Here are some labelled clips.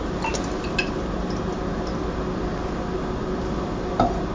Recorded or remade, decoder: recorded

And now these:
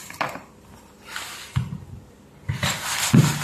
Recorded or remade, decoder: recorded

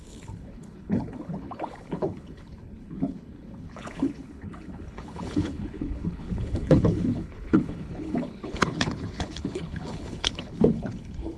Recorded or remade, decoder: remade, codec, HILCodec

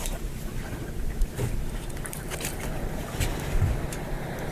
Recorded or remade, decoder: remade, vocoder, BigVGAN v2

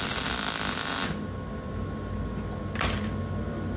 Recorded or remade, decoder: recorded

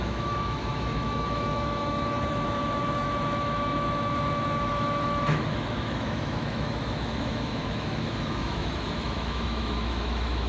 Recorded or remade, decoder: remade, autoencoder, DAC-VAE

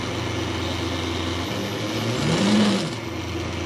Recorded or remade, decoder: recorded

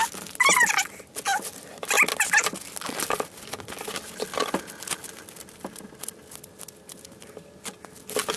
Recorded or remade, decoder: recorded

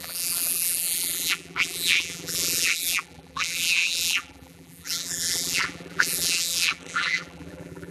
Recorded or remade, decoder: remade, vocoder, BigVGAN v2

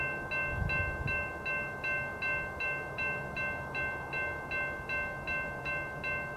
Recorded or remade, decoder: recorded